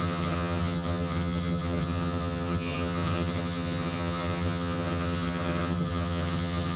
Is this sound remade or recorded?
remade